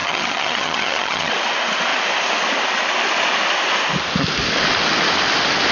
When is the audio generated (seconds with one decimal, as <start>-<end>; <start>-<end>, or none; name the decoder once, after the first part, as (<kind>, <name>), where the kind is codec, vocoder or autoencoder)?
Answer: 0.0-1.3 (vocoder, HiFi-GAN)